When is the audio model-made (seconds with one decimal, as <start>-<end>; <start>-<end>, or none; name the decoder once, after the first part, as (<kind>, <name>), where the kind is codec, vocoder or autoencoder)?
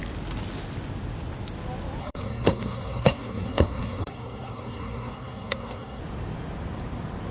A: 2.0-6.0 (codec, SNAC)